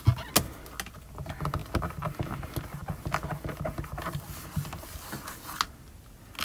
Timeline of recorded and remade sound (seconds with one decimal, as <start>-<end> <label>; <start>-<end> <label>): 0.0-6.4 recorded